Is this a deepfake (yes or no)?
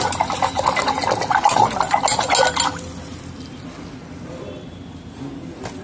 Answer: no